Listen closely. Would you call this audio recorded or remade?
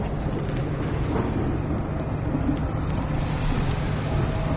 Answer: recorded